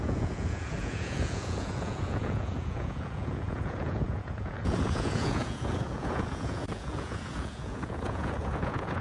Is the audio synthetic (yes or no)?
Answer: yes